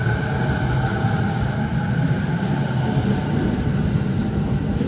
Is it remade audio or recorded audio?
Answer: recorded